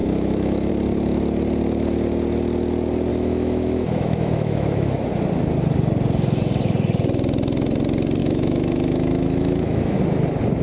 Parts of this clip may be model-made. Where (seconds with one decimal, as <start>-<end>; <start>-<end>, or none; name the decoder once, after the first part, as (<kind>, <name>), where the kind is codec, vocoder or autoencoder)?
0.0-0.7 (autoencoder, DAC-VAE); 3.1-5.1; 8.2-10.0